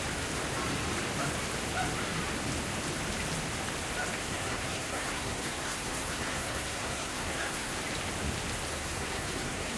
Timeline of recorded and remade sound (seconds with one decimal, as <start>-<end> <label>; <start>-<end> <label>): 0.0-4.2 recorded; 4.2-7.8 remade; 7.8-8.7 recorded; 8.7-9.8 remade